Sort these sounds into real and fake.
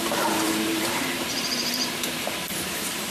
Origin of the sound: fake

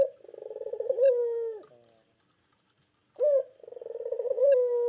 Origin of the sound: real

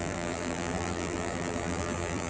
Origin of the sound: fake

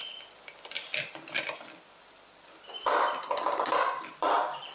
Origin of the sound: fake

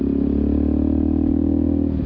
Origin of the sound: real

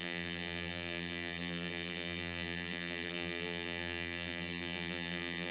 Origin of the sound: fake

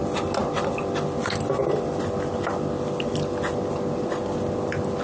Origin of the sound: real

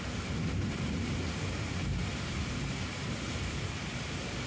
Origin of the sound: fake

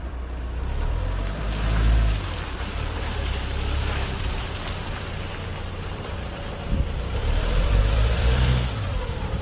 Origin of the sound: fake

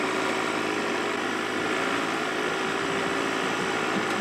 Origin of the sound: fake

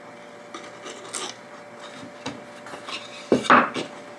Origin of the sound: real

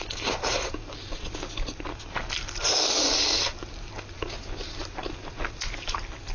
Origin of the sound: real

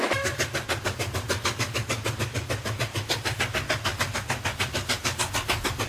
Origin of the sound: real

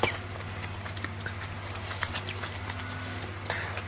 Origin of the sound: real